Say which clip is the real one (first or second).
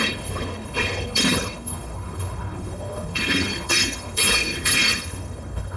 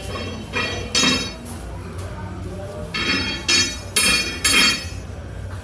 second